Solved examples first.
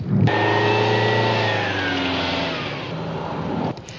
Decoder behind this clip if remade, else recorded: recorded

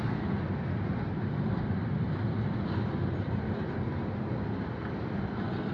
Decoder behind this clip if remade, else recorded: recorded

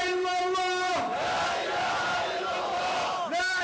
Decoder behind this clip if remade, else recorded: recorded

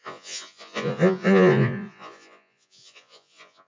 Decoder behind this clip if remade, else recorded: remade, vocoder, Vocos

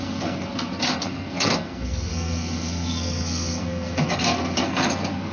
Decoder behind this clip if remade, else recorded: remade, codec, SNAC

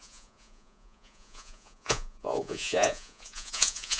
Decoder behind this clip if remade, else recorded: remade, vocoder, Vocos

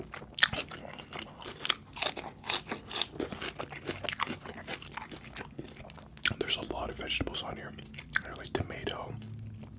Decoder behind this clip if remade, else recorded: recorded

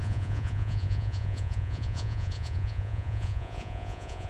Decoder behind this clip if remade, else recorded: remade, vocoder, Vocos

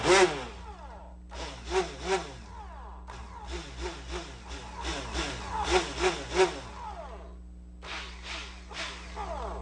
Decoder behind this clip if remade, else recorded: recorded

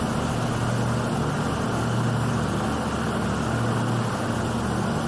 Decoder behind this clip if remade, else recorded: recorded